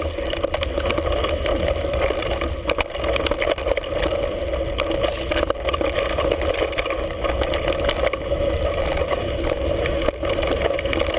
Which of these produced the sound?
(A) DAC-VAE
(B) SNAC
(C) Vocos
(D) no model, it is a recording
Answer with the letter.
D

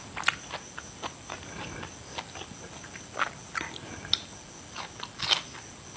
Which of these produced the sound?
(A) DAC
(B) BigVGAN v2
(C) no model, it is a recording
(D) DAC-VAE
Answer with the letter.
C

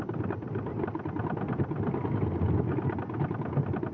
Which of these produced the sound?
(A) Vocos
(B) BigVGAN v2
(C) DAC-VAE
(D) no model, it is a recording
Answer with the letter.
D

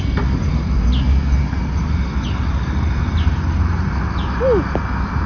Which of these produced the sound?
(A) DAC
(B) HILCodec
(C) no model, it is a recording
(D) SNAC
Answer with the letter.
C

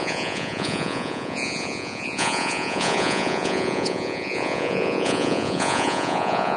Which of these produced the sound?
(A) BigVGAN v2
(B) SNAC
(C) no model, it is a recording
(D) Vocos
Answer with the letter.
D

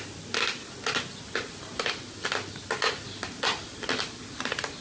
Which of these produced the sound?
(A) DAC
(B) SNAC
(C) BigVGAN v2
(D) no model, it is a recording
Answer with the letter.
D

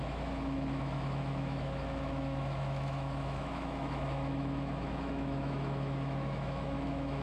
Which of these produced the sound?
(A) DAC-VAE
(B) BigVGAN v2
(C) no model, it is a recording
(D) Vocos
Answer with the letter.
A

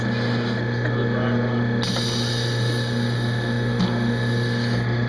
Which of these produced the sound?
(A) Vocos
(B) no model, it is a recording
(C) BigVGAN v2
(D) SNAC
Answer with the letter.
B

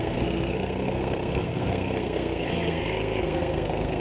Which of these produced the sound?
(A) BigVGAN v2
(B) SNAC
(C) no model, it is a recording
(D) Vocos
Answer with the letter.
B